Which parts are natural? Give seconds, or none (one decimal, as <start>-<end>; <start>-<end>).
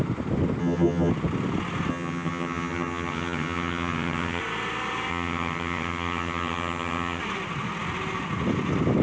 0.0-0.6; 1.1-1.9; 4.4-5.1; 7.2-9.0